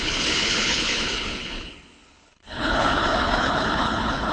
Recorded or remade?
remade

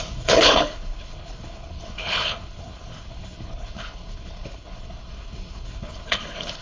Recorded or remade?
remade